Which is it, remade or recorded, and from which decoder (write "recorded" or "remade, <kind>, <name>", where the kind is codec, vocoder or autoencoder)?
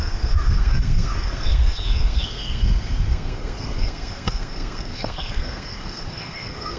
remade, codec, SNAC